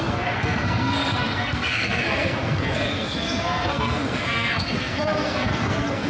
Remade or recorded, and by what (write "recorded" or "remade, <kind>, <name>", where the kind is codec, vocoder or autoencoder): remade, codec, SNAC